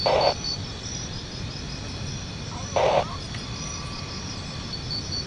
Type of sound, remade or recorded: recorded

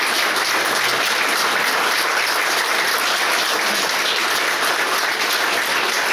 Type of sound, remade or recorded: recorded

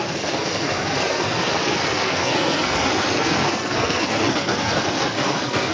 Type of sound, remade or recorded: remade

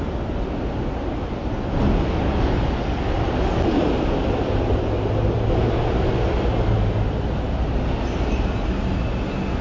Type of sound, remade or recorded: recorded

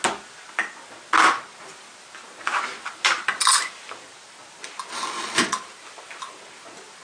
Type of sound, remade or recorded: recorded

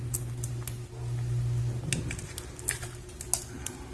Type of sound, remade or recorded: recorded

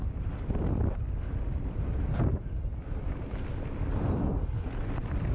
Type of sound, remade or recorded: recorded